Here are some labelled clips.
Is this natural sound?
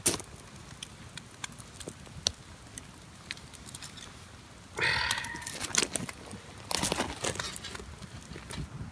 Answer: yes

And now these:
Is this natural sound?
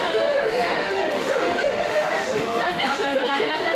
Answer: no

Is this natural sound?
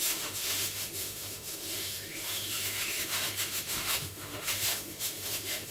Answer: no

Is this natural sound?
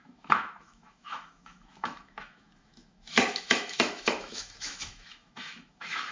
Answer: no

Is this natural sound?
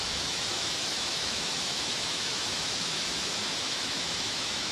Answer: no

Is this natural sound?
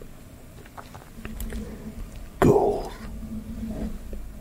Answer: yes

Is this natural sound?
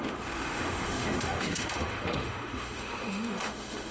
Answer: no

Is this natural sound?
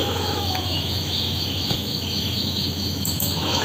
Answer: no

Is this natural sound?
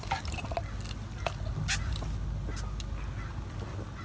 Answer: yes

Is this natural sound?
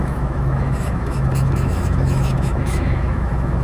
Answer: no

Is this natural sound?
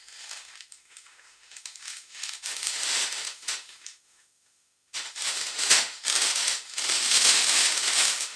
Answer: no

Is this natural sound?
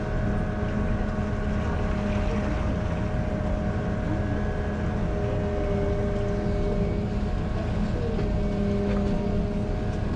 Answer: yes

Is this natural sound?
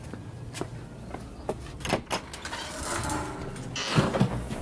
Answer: yes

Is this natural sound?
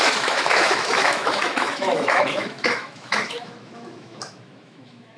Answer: no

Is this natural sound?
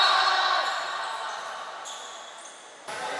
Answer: yes